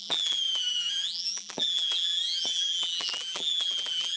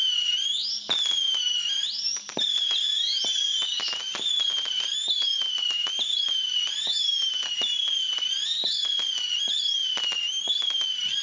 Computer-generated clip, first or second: first